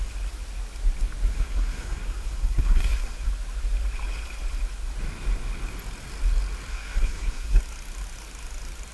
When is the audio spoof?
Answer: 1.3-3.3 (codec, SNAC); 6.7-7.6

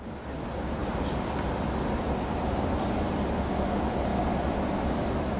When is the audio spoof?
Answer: none